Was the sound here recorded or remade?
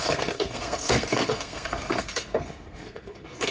remade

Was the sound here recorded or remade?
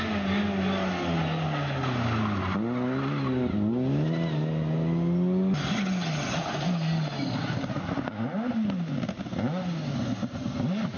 recorded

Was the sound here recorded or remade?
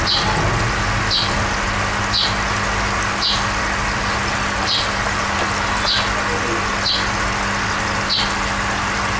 recorded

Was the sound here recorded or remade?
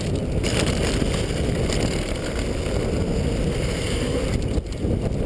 recorded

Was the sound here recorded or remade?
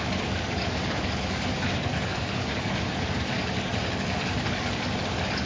remade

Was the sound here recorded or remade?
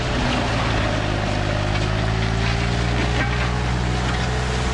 recorded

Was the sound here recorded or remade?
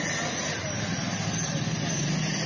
recorded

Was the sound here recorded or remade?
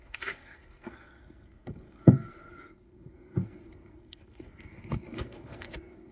remade